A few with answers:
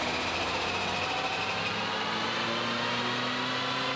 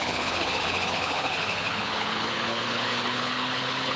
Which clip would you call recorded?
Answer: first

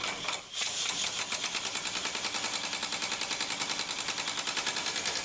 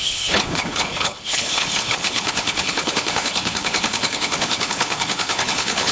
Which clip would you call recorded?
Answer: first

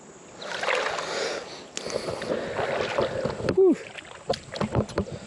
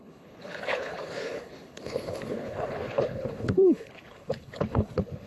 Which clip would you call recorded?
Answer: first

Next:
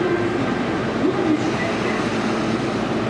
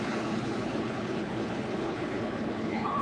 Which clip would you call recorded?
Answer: first